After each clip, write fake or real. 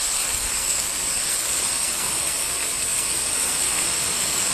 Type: fake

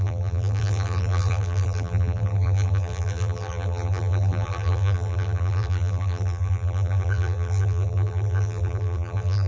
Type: fake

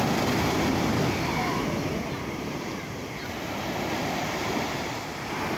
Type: real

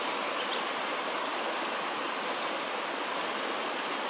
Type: real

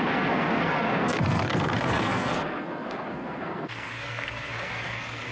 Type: fake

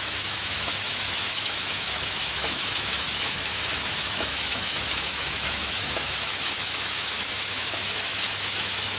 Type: fake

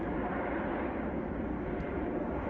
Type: real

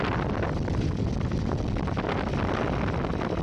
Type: real